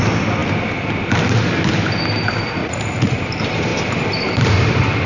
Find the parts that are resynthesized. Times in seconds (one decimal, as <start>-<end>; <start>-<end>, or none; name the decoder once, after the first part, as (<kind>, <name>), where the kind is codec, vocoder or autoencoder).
2.6-3.2 (vocoder, Vocos)

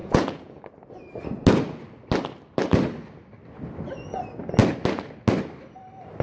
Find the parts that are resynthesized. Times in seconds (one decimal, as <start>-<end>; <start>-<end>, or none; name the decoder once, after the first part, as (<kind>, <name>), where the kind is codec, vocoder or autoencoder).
0.0-0.6 (vocoder, Vocos)

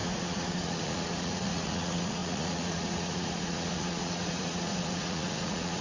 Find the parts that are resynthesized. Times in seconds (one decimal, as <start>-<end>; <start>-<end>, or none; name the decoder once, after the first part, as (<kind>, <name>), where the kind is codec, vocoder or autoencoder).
0.0-5.8 (vocoder, Vocos)

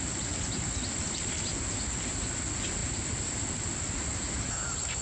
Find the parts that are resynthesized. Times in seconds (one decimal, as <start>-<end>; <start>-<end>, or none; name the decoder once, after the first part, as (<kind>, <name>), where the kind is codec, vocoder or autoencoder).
none

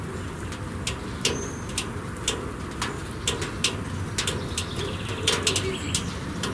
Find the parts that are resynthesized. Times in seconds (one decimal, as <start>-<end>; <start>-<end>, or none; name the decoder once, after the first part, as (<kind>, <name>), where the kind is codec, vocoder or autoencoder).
none

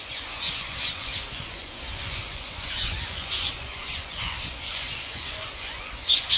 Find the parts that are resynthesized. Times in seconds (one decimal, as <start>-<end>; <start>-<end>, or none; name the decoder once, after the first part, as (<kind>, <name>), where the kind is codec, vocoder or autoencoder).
0.0-6.4 (vocoder, Vocos)

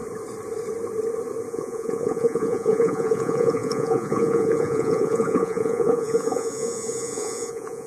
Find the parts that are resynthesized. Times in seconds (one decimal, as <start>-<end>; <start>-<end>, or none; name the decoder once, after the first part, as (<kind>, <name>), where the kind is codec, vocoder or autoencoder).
1.5-7.9 (vocoder, Vocos)

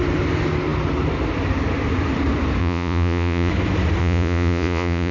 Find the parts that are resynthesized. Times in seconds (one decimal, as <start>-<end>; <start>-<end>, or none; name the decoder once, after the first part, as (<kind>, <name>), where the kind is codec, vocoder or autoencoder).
2.6-3.5 (vocoder, Vocos); 4.0-5.1